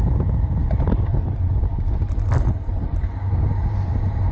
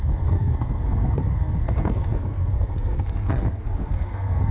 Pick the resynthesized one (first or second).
second